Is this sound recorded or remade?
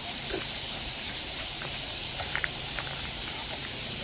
remade